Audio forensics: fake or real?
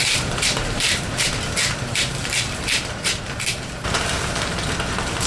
fake